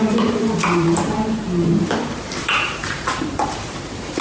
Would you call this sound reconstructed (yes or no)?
yes